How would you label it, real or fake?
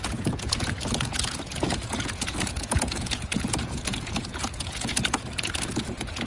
fake